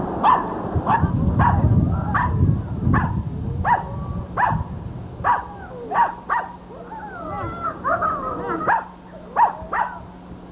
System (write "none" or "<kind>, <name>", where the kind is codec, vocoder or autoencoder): none